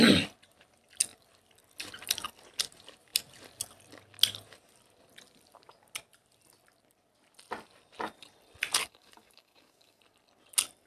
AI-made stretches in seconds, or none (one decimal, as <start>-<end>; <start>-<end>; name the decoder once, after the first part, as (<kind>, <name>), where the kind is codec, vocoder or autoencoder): 8.8-10.0 (codec, DAC)